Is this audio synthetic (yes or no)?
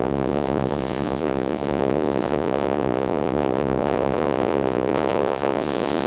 yes